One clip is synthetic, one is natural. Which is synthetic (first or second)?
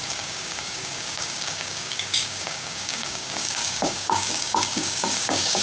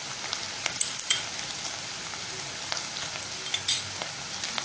first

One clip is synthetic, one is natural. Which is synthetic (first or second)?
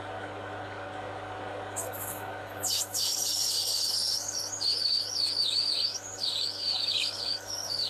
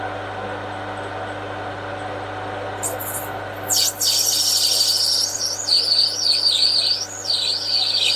first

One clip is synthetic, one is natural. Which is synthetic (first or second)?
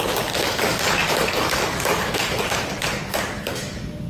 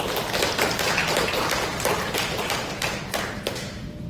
first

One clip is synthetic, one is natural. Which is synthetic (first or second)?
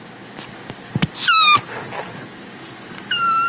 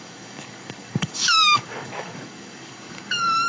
second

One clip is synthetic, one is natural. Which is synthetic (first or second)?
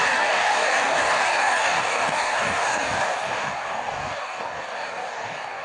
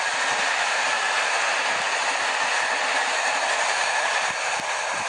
first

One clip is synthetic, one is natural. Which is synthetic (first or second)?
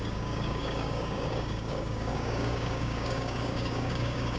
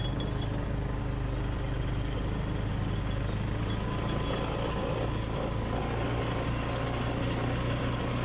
first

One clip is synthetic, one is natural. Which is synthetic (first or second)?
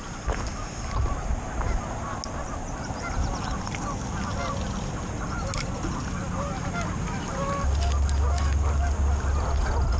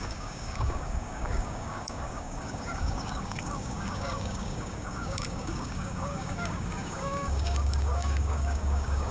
second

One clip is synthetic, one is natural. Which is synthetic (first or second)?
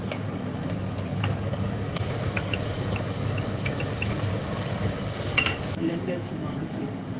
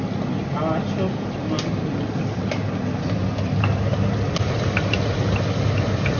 first